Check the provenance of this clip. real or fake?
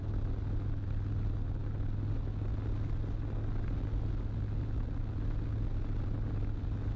real